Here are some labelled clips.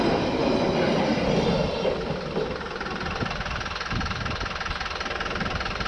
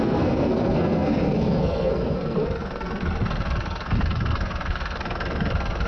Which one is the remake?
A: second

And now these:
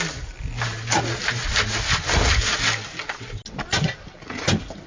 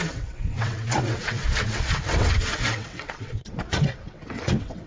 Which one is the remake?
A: second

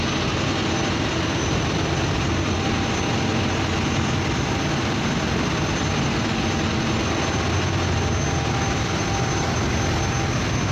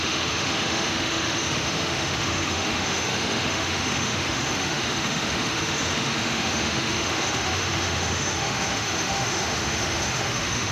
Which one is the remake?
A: second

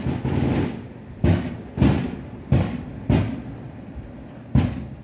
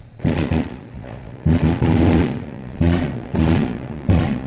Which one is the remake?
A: second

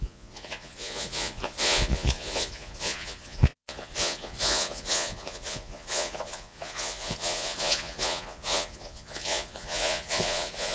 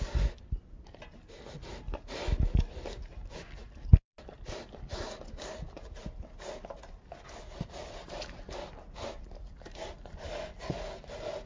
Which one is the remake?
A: first